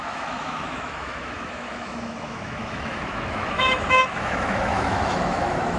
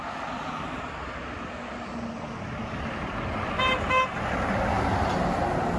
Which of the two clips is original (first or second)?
second